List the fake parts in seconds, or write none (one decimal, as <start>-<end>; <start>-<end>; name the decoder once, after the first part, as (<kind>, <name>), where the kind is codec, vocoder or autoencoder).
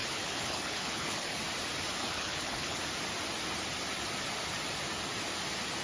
0.0-1.4 (codec, HILCodec); 2.0-2.8